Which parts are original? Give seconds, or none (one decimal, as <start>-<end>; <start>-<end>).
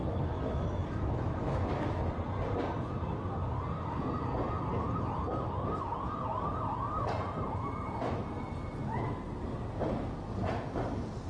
2.1-11.3